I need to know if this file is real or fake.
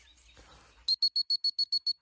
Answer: real